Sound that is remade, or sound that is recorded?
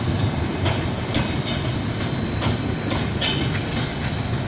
recorded